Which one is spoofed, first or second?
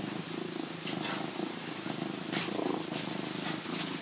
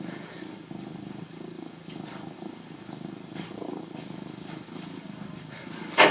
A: second